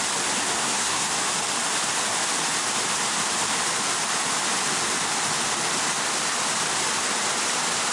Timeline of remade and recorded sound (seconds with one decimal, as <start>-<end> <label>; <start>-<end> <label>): 0.0-0.6 recorded; 0.6-1.1 remade; 1.1-7.9 recorded